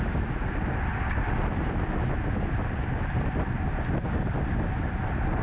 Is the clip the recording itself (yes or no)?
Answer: yes